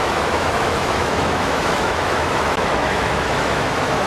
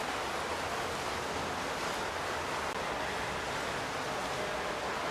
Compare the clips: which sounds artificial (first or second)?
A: first